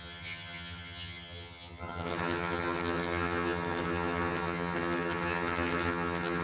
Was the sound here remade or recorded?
remade